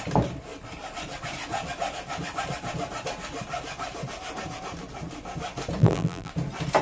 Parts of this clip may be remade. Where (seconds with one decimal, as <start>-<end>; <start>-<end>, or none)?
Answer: 5.8-6.3